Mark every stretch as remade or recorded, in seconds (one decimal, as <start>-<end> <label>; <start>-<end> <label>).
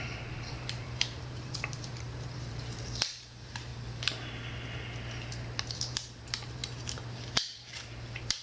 0.0-3.7 remade; 3.7-5.6 recorded; 5.6-8.4 remade